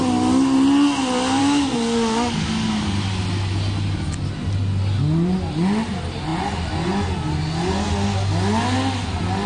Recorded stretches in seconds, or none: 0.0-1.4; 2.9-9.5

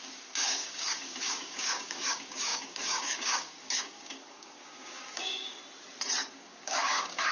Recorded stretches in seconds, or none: 5.6-6.3

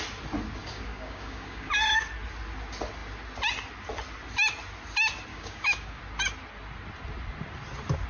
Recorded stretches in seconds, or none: 0.0-0.6; 1.7-5.3; 6.0-8.1

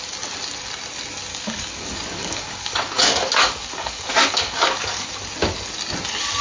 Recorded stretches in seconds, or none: 0.0-1.3; 5.1-6.4

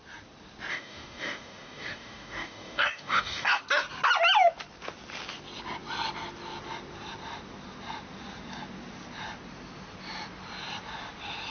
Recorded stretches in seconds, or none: 0.0-0.7; 3.6-11.5

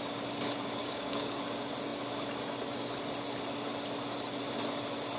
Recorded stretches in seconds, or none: 0.0-0.8; 1.4-5.2